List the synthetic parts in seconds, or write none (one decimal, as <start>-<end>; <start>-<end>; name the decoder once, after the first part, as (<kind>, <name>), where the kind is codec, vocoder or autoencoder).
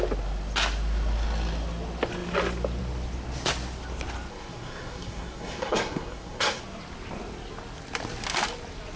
4.3-6.6 (codec, SNAC)